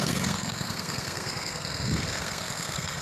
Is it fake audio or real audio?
fake